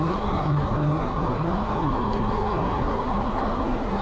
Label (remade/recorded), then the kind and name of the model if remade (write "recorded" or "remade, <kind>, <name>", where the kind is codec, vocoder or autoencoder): remade, codec, SNAC